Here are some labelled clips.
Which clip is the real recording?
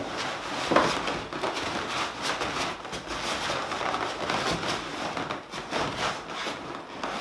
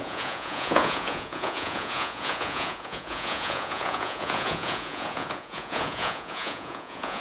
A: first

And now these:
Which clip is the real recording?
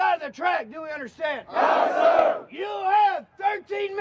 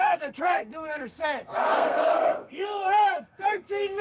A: first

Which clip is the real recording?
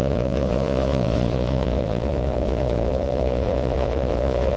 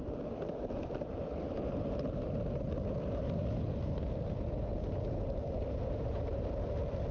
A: second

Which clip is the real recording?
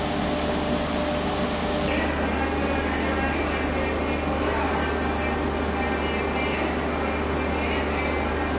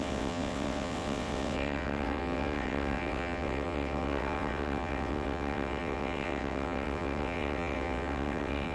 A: first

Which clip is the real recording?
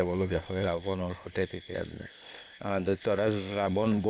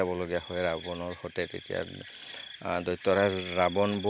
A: second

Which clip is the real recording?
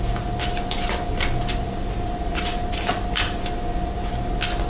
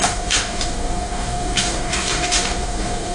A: first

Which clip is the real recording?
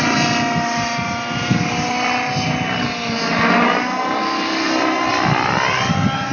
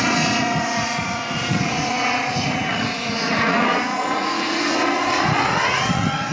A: first